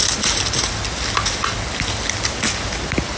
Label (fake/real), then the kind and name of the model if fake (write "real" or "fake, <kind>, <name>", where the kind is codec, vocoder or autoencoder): real